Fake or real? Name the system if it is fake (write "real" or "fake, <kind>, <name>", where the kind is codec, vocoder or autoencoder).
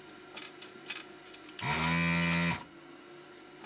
real